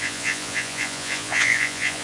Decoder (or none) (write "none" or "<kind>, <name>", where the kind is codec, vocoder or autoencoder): vocoder, Vocos